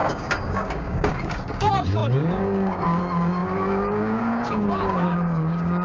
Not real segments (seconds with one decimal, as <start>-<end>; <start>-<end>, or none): 0.0-5.8